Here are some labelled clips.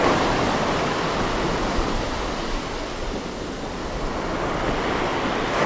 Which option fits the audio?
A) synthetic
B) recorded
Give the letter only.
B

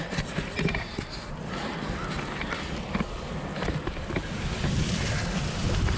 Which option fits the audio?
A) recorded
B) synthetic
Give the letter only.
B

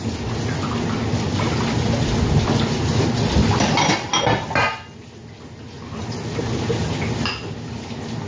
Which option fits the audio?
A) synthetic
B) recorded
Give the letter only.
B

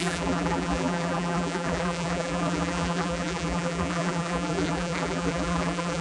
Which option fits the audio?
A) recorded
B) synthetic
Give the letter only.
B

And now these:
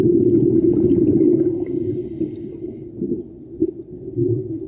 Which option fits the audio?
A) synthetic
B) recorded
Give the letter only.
B